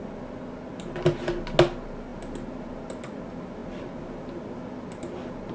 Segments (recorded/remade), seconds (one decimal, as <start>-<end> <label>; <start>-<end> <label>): 0.0-5.5 recorded